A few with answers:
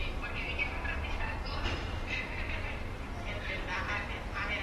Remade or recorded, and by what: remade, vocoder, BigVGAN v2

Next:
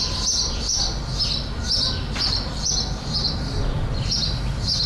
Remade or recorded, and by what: remade, vocoder, BigVGAN v2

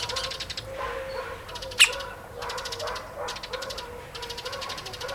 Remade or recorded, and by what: remade, vocoder, BigVGAN v2